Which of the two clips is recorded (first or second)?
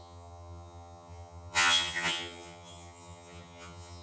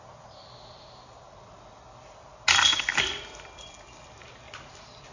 second